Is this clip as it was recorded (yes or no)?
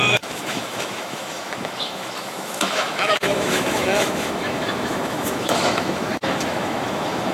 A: no